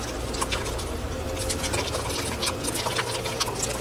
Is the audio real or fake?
real